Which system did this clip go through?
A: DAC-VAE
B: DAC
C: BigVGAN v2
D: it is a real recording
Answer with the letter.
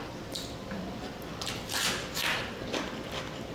C